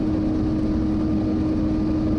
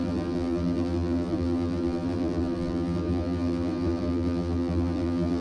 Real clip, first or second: first